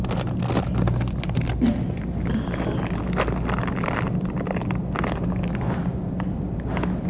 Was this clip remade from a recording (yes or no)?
no